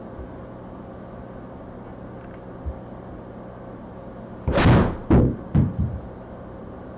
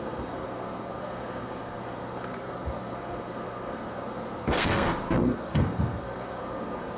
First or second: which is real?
first